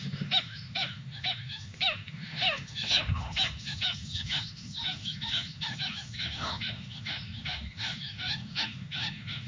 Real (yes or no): no